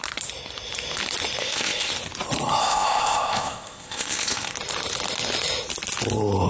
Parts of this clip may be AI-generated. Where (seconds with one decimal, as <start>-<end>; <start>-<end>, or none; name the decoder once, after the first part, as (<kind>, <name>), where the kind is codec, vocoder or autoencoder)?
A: 1.4-1.9 (codec, ZipCodec); 2.6-4.5